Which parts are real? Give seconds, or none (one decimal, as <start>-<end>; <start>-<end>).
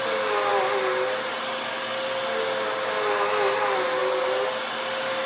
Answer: 0.0-5.3